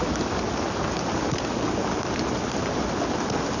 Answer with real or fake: real